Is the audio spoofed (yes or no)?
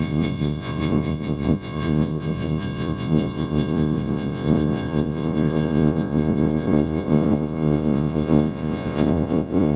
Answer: yes